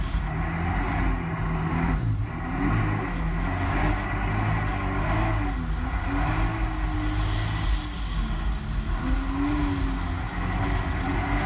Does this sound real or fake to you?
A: real